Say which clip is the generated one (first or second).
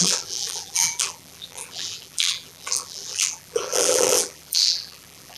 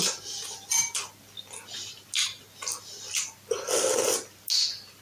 first